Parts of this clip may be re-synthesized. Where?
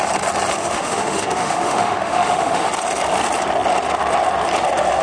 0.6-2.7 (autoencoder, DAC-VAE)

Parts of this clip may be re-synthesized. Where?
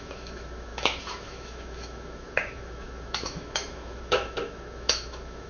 0.0-5.5 (autoencoder, DAC-VAE)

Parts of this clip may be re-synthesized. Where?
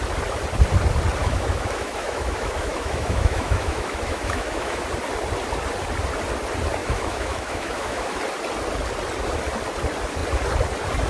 1.2-4.8 (autoencoder, DAC-VAE); 6.8-8.2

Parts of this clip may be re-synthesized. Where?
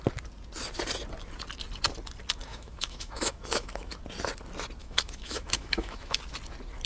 2.5-4.0 (autoencoder, DAC-VAE); 4.8-6.2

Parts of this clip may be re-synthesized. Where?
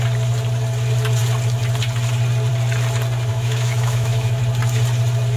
3.3-4.4 (autoencoder, DAC-VAE)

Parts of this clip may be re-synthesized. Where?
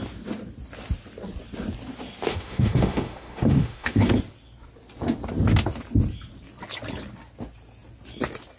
2.3-4.1 (autoencoder, DAC-VAE)